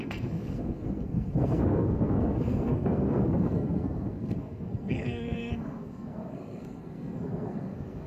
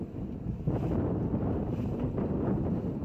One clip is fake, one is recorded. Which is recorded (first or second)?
second